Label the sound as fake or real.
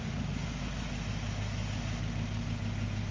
real